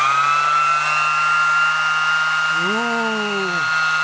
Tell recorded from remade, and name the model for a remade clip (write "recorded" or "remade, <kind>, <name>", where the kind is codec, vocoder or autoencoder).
recorded